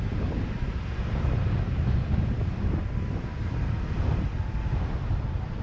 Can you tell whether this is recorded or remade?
recorded